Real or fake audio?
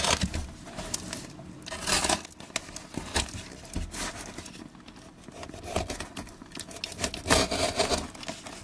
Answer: real